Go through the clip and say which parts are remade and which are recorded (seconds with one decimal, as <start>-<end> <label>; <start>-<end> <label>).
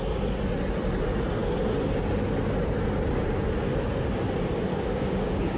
0.0-4.7 recorded; 4.7-5.6 remade